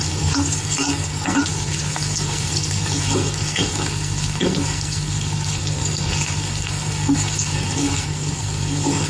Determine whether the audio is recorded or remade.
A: remade